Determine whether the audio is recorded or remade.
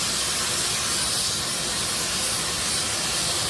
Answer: recorded